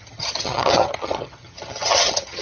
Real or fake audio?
fake